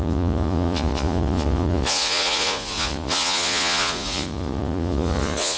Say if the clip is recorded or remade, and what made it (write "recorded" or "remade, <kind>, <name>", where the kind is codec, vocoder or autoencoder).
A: remade, vocoder, Vocos